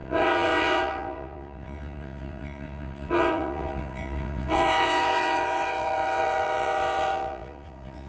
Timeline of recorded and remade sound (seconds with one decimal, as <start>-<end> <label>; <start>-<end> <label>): 0.0-8.1 remade